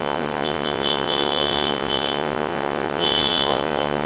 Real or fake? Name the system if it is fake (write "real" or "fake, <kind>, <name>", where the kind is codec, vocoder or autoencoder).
fake, vocoder, WaveNeXt